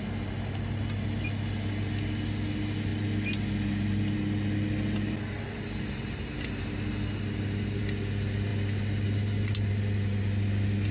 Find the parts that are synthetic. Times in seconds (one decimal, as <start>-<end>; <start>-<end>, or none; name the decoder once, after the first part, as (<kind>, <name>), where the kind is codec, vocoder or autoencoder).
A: none